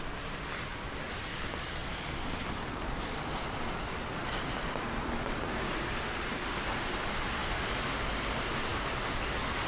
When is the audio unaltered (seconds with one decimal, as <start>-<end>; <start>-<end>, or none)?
0.0-9.7